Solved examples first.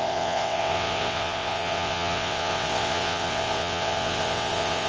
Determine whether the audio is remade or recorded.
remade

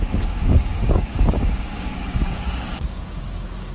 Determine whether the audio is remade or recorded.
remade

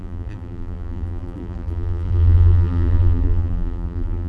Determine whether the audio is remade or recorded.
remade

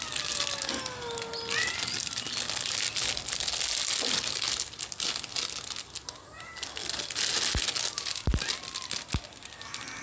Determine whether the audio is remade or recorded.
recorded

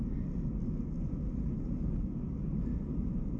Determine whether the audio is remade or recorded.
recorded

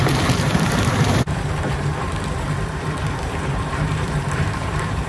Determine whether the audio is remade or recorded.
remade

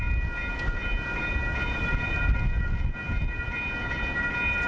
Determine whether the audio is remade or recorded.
recorded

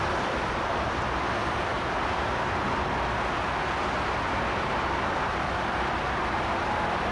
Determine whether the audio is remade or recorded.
recorded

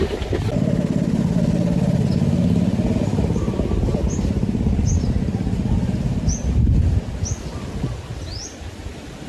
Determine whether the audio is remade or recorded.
recorded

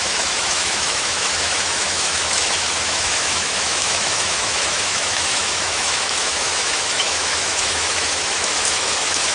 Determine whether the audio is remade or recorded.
remade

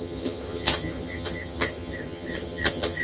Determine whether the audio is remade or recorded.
remade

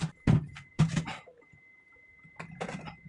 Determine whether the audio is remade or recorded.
recorded